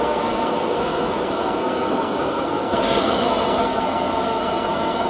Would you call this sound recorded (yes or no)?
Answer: no